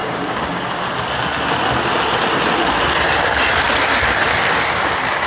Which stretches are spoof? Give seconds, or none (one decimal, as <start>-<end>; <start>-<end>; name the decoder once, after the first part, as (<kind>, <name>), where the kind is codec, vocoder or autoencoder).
0.0-0.7 (codec, DAC)